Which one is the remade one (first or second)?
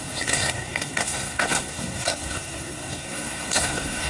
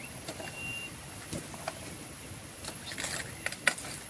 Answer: first